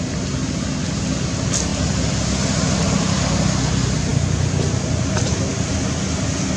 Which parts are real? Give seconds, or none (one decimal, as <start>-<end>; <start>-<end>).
0.0-6.6